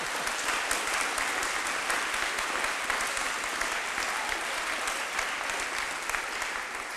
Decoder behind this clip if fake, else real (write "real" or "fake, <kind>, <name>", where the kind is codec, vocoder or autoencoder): real